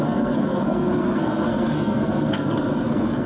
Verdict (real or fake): fake